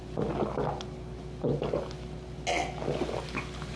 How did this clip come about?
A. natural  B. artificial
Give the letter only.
A